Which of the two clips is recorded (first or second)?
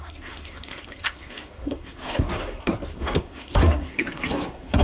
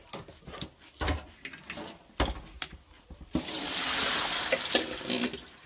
second